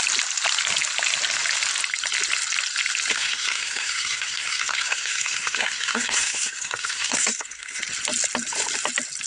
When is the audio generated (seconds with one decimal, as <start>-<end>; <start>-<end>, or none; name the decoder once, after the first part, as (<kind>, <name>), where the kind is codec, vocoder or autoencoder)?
3.1-7.8 (codec, SNAC)